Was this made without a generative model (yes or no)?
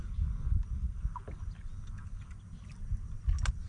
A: yes